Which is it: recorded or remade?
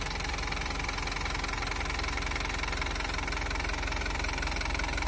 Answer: recorded